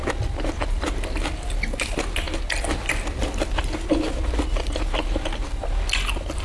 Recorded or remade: recorded